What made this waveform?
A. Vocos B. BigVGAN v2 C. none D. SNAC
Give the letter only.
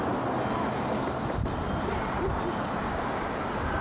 C